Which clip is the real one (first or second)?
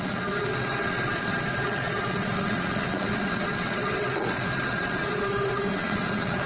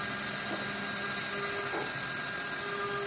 second